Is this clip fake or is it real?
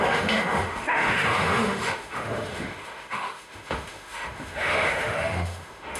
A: fake